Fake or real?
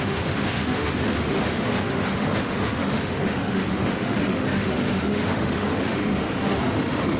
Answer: fake